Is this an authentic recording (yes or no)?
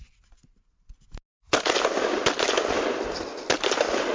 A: yes